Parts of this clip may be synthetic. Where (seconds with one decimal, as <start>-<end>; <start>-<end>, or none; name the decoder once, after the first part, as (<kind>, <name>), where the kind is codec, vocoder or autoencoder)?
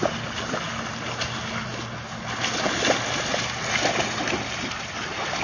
none